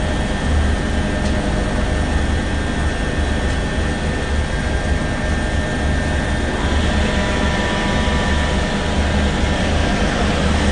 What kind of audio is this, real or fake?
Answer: real